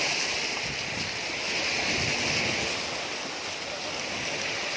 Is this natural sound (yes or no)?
yes